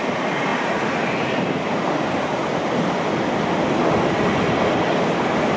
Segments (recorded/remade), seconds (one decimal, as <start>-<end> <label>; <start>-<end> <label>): 0.0-5.6 recorded